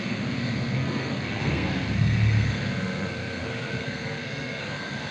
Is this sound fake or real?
fake